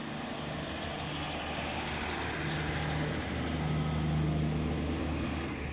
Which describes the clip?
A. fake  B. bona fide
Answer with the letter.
B